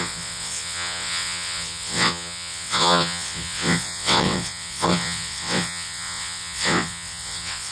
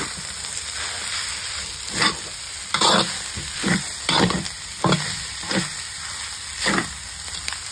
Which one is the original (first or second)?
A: second